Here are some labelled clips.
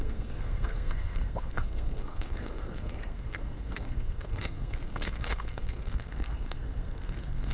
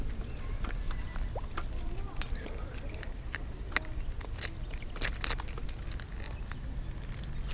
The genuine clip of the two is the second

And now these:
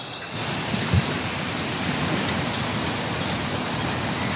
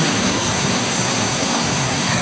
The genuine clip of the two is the first